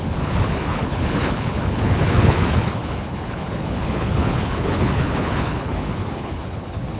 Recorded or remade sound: remade